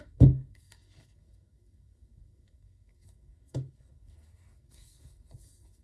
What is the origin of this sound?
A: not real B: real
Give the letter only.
A